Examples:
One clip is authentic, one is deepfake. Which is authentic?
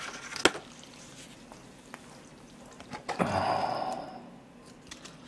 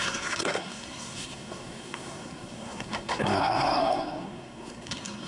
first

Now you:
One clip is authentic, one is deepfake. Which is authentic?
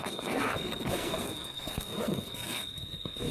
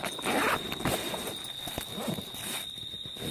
second